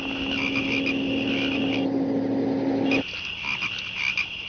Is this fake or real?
real